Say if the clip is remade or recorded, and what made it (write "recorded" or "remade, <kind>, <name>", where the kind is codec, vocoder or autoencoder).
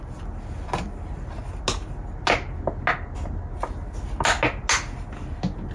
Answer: recorded